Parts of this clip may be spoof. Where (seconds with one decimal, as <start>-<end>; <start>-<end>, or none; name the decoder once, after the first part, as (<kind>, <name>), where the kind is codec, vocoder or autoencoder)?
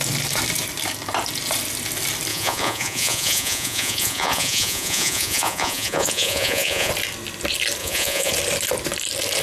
2.3-6.9 (vocoder, Vocos); 7.8-8.3